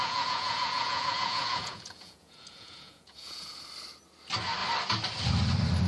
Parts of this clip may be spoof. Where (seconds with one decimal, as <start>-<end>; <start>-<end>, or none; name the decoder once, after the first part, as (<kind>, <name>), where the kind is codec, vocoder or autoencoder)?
0.0-3.5 (vocoder, Vocos)